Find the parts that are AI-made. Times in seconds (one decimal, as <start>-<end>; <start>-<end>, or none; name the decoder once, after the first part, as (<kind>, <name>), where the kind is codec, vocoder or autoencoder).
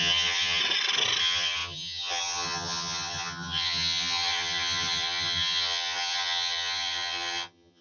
0.0-0.6 (vocoder, HiFi-GAN); 1.2-7.8